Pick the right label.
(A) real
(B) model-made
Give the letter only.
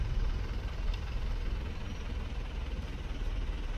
B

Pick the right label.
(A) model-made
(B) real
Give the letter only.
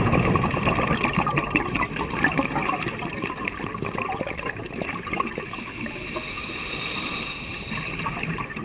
B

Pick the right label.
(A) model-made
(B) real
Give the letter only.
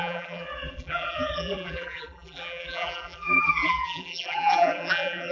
A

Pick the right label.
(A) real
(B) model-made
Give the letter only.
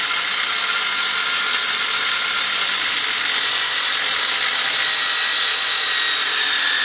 A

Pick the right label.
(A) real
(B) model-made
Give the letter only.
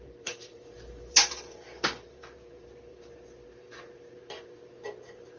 B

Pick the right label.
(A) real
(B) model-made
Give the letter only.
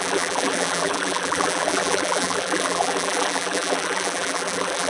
B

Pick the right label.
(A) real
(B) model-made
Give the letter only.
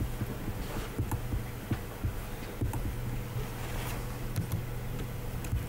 A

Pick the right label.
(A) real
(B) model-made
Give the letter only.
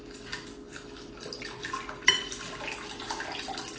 A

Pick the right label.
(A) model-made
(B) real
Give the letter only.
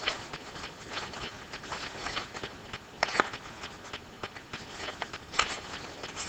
B